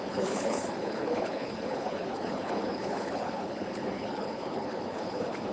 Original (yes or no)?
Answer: no